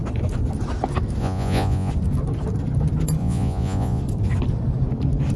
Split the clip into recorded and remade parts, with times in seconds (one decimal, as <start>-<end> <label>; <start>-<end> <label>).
0.0-1.2 recorded; 1.2-1.9 remade; 1.9-3.2 recorded; 3.2-4.0 remade; 4.0-5.4 recorded